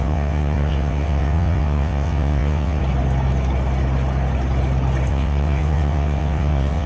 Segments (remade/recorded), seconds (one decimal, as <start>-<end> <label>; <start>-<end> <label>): 0.0-2.8 remade; 2.8-5.1 recorded; 5.1-6.9 remade